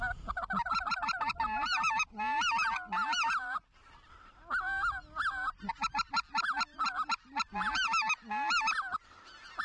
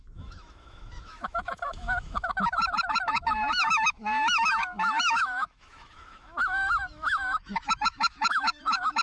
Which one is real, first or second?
first